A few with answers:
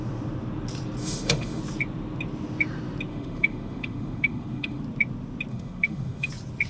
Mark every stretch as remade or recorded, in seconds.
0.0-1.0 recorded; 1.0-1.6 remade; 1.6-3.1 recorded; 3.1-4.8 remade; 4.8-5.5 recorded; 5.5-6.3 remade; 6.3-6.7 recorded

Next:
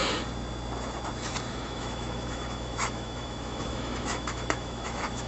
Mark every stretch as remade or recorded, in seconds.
0.0-1.5 recorded; 1.5-5.3 remade

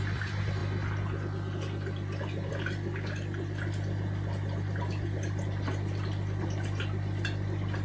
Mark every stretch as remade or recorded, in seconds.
0.0-7.8 recorded

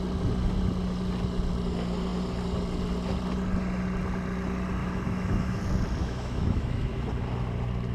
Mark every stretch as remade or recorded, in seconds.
0.0-4.8 recorded; 4.8-5.6 remade; 5.6-6.0 recorded; 6.0-7.1 remade; 7.1-7.9 recorded